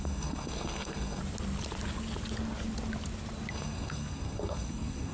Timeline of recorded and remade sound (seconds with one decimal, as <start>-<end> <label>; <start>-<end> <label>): 0.0-1.2 remade; 1.2-3.5 recorded; 3.5-5.1 remade